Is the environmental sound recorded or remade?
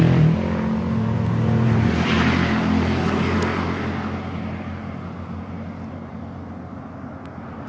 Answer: recorded